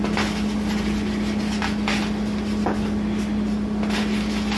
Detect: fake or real real